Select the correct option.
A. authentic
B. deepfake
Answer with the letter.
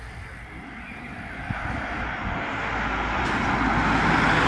A